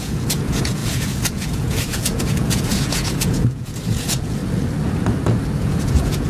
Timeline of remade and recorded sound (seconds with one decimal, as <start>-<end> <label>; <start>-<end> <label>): 0.0-4.4 remade; 4.4-5.6 recorded; 5.6-6.3 remade